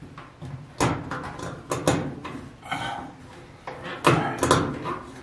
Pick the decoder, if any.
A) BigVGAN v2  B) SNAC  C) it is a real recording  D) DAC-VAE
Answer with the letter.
C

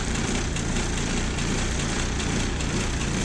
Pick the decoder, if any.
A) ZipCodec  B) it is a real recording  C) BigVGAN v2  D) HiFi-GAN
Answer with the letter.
C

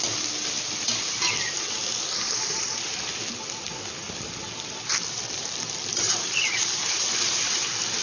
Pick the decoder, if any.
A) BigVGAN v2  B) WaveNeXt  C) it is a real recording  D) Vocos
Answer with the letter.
A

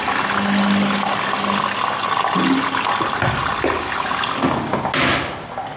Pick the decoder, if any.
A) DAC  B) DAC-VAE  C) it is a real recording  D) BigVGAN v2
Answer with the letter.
C